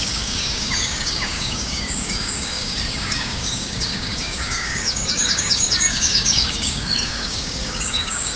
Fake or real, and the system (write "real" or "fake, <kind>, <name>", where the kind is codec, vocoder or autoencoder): fake, codec, DAC